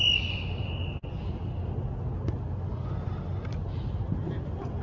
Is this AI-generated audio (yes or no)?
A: no